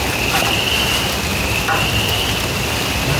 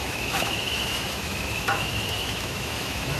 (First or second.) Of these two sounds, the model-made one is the second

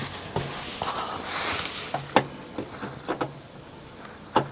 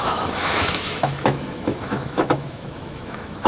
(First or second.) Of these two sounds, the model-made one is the second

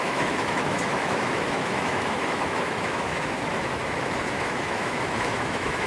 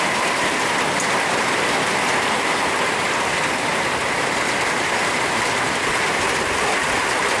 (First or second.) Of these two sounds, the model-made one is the first